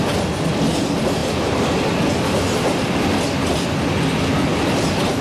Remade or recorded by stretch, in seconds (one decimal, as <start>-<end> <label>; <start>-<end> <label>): 0.0-5.2 recorded